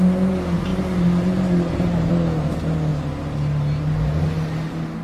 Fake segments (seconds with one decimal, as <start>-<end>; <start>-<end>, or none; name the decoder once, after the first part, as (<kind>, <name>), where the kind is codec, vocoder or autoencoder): 0.7-2.1 (vocoder, BigVGAN v2)